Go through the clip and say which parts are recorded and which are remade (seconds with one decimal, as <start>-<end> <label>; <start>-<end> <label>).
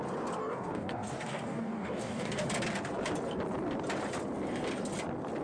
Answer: 0.0-0.4 recorded; 0.4-2.3 remade; 2.3-5.4 recorded